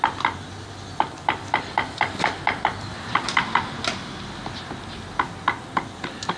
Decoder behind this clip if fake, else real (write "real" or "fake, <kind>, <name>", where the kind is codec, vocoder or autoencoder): real